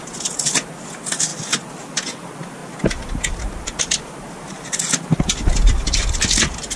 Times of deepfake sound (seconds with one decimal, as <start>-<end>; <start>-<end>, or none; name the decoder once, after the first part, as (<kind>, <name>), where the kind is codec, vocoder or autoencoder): none